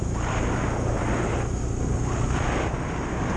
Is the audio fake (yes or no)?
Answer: no